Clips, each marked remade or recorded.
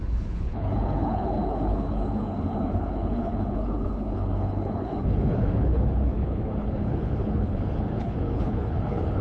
remade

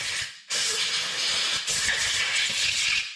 recorded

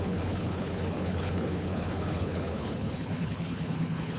remade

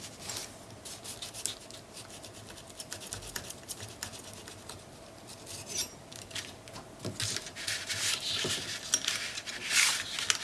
recorded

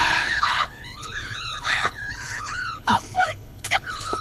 remade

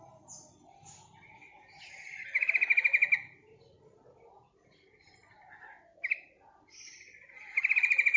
recorded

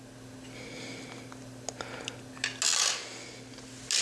recorded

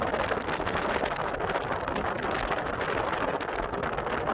recorded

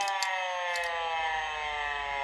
recorded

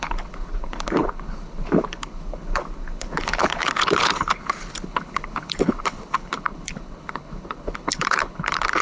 remade